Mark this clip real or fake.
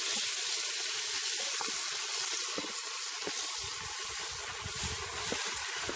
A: real